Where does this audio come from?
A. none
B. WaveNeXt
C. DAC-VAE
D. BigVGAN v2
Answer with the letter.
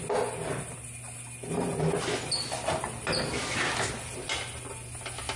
A